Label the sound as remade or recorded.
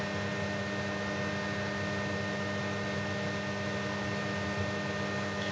recorded